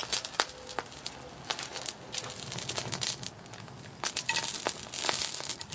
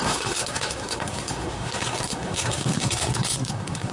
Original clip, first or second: first